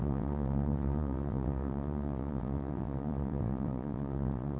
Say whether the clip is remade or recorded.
remade